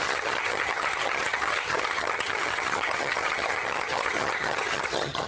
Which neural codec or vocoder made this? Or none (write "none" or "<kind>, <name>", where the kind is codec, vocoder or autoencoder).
vocoder, HiFi-GAN